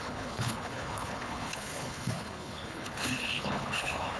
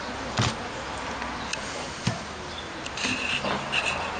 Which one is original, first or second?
second